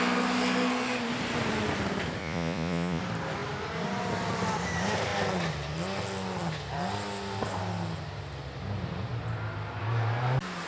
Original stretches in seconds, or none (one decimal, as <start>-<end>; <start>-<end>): 0.0-2.2; 3.0-10.7